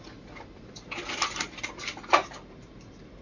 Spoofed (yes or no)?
no